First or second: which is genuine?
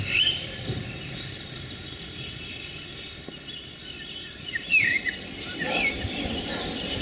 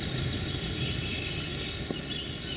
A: second